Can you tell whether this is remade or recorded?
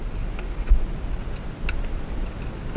recorded